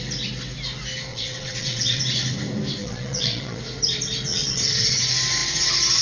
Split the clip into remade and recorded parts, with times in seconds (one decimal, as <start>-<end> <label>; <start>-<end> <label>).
0.0-1.1 recorded; 1.1-2.0 remade; 2.0-2.8 recorded; 2.8-3.6 remade; 3.6-4.3 recorded; 4.3-5.0 remade; 5.0-6.0 recorded